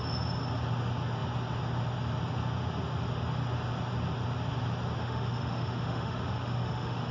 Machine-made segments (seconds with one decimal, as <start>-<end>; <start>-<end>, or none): 5.0-7.1